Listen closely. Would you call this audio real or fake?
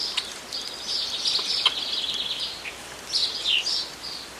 real